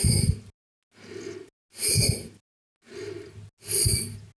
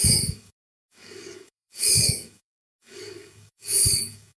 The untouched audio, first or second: first